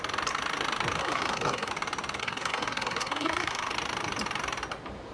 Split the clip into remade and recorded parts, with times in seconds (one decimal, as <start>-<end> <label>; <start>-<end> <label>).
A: 0.0-1.0 recorded; 1.0-1.7 remade; 1.7-2.2 recorded; 2.2-3.7 remade; 3.7-5.1 recorded